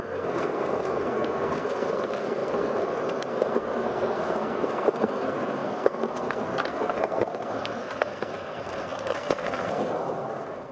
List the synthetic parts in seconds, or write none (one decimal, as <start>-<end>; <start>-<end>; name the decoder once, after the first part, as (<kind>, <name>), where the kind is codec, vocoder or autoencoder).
0.0-10.7 (codec, SNAC)